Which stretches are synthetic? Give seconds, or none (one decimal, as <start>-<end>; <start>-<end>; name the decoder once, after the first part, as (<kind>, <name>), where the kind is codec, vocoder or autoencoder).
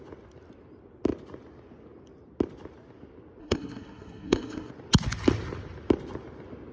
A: 3.4-4.7 (codec, SNAC)